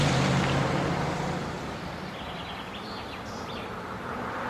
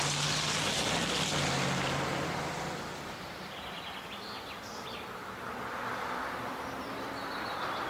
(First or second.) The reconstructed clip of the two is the first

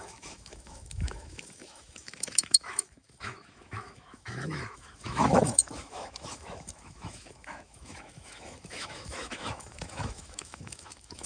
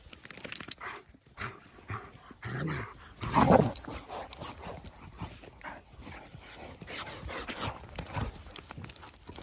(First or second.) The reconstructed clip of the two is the first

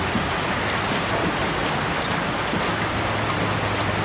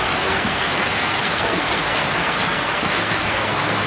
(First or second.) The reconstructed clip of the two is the second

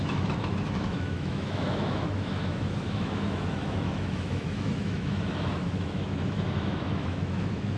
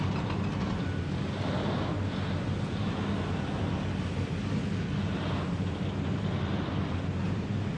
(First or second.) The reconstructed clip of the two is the first